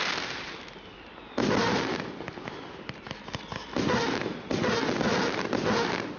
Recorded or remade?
recorded